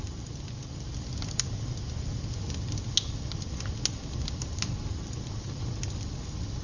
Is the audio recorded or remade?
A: recorded